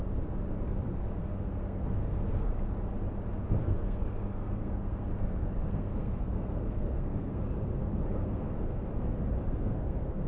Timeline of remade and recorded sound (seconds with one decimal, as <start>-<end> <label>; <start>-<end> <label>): 0.0-1.2 recorded; 1.2-2.5 remade; 2.5-3.6 recorded; 3.6-8.9 remade; 8.9-9.4 recorded; 9.4-10.3 remade